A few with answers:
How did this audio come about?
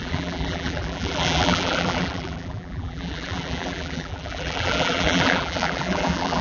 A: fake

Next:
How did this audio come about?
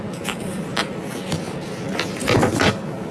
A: real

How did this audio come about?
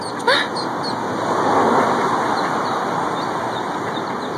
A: real